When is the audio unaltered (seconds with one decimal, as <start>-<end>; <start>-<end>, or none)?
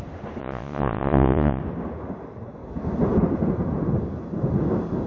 0.0-0.4; 1.6-5.1